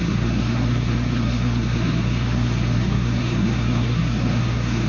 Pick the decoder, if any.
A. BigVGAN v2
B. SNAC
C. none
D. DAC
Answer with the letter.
B